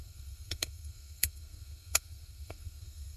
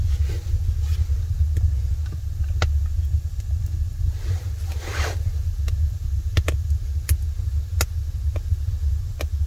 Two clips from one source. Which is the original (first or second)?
second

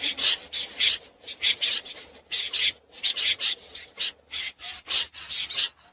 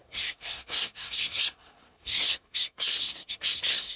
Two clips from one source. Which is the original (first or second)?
first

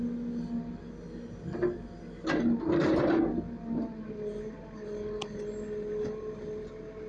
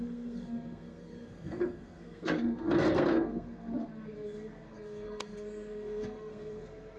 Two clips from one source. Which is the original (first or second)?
first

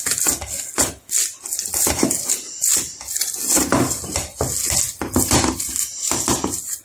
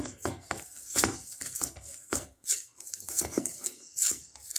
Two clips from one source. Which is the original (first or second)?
first